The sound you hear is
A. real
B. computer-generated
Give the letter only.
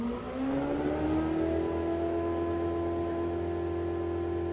A